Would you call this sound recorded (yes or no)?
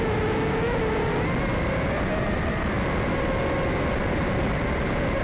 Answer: yes